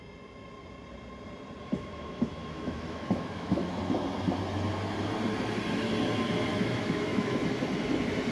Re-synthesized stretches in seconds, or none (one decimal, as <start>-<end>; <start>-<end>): 1.6-3.8; 6.5-7.4